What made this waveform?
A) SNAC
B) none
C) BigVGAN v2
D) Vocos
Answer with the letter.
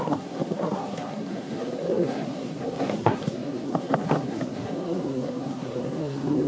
A